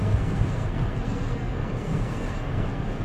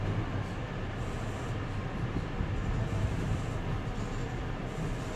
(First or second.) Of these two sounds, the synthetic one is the first